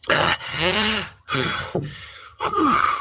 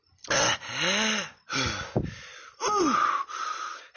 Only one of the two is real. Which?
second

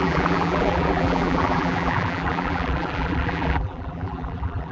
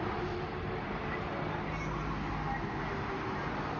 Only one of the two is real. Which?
second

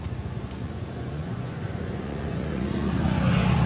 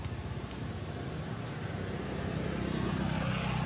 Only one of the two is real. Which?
second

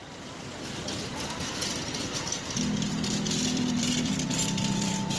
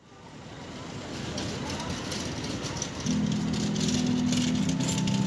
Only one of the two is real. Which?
second